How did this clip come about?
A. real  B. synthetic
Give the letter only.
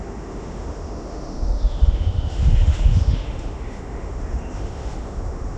B